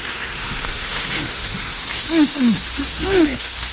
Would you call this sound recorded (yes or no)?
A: no